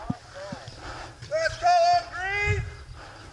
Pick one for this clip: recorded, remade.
recorded